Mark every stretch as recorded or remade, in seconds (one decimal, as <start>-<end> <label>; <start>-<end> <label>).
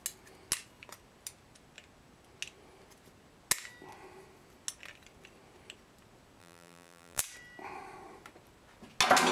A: 0.0-6.4 recorded; 6.4-7.2 remade; 7.2-9.3 recorded